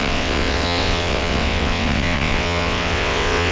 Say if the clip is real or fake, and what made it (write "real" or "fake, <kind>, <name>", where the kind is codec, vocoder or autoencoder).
fake, vocoder, WaveNeXt